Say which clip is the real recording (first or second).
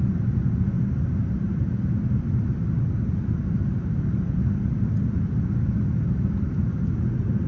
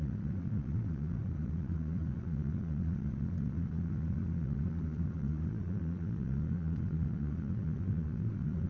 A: first